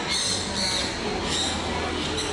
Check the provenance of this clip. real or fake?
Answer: real